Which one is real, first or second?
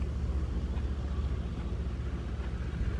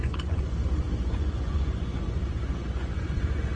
first